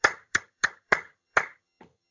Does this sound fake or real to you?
fake